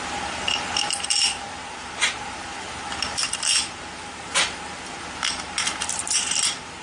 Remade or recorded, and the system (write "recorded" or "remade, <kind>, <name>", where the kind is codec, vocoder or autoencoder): remade, vocoder, BigVGAN v2